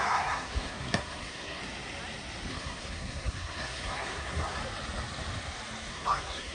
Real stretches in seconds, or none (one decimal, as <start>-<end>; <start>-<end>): 1.6-2.5; 4.6-5.9